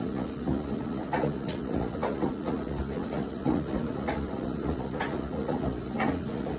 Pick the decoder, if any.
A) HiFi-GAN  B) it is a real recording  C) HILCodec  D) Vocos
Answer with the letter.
D